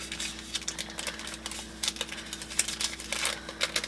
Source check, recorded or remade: recorded